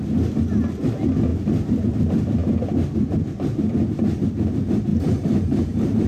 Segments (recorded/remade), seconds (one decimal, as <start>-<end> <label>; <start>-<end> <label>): 0.0-4.9 recorded; 4.9-6.1 remade